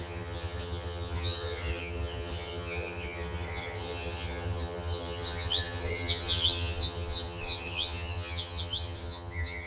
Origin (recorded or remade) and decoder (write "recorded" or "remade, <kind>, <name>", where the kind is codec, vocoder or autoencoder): remade, vocoder, HiFi-GAN